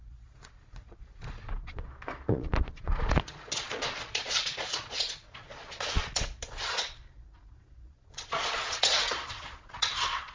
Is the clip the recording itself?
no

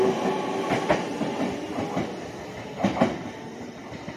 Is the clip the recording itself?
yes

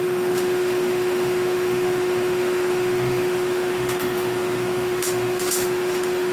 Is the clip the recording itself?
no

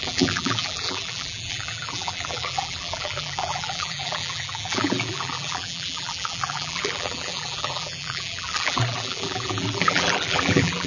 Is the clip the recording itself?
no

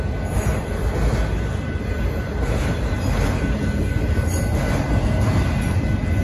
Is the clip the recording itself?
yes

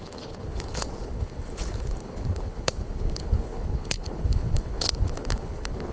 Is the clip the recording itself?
no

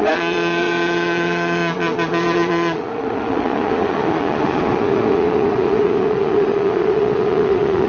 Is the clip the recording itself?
no